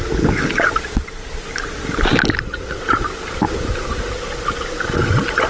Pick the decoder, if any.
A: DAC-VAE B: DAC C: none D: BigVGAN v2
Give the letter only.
C